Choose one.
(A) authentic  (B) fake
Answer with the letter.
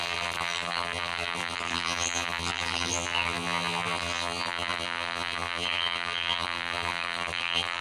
B